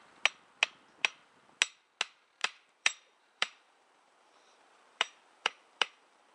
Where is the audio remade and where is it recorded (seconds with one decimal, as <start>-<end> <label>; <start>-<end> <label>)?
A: 0.0-2.4 recorded; 2.4-6.3 remade